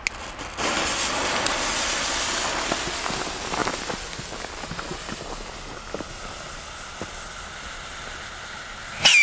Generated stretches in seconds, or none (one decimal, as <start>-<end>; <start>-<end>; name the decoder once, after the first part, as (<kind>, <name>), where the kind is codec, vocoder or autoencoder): none